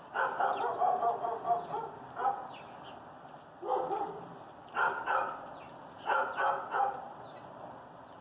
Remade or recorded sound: recorded